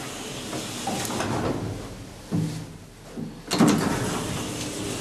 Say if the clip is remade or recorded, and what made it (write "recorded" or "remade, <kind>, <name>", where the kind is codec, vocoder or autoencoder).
recorded